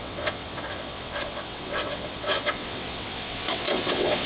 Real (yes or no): no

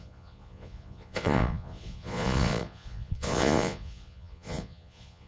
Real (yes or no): no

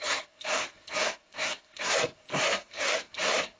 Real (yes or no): no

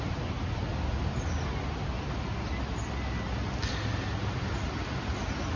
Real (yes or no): yes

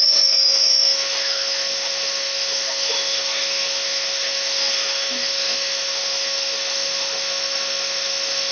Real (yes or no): no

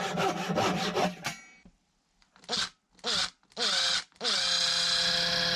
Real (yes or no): yes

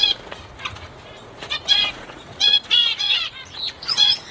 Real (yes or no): no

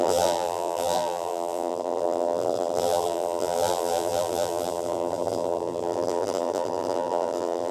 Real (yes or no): no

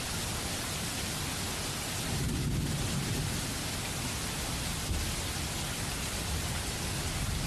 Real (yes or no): yes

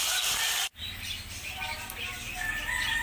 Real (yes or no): yes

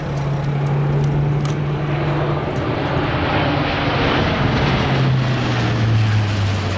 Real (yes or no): yes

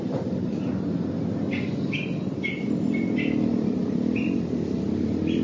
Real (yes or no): yes